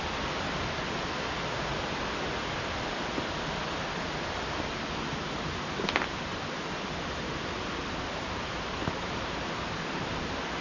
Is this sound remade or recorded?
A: recorded